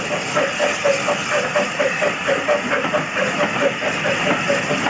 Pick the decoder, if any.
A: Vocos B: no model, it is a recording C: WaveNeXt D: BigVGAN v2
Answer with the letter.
B